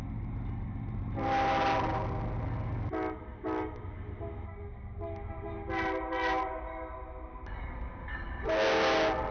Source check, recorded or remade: recorded